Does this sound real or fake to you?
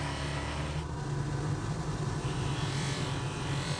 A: real